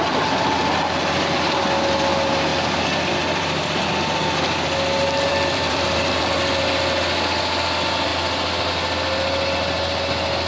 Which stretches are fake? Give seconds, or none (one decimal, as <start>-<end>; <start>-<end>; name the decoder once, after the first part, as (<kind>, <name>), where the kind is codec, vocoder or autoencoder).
2.5-3.8 (vocoder, BigVGAN v2); 5.3-6.2